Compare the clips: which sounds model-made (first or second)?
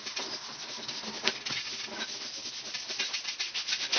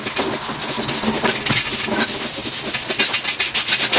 first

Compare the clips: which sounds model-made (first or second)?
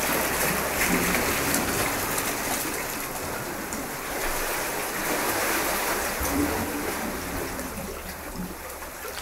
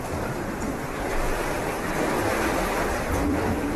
second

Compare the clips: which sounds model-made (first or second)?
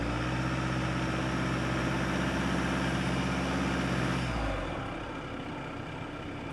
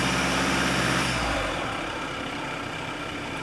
second